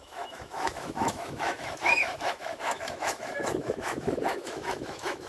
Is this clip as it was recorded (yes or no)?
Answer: no